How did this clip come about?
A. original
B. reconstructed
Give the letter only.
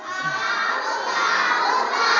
A